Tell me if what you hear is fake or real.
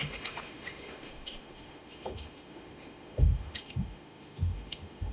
fake